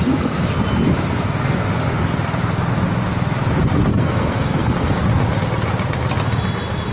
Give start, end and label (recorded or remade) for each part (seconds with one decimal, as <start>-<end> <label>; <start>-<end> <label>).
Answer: 0.0-3.9 recorded; 3.9-5.0 remade; 5.0-6.9 recorded